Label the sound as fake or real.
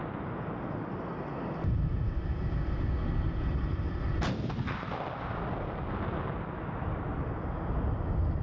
real